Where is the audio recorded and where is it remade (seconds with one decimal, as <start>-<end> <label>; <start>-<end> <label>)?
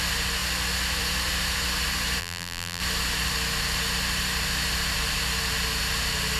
0.0-2.2 recorded; 2.2-2.8 remade; 2.8-6.4 recorded